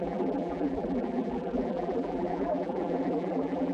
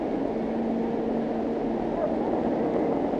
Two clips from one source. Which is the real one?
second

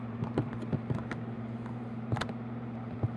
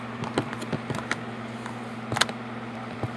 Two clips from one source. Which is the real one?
second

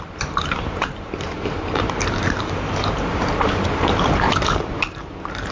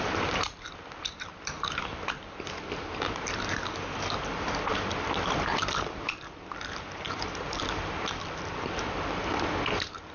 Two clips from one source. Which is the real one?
second